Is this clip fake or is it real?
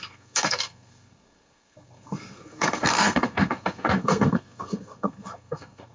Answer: fake